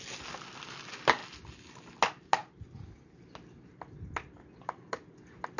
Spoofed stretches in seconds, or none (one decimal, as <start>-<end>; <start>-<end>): none